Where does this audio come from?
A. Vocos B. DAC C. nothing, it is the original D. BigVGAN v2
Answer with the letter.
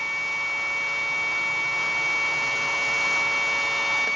C